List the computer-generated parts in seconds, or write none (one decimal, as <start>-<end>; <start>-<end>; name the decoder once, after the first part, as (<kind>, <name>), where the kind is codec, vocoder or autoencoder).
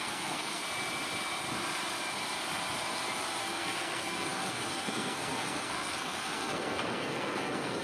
0.0-0.6 (codec, SNAC); 3.4-7.8